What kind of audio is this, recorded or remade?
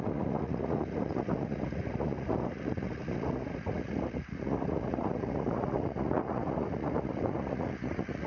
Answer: remade